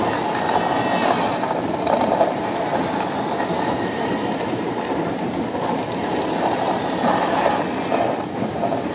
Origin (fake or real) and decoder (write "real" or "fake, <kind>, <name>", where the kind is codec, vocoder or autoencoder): real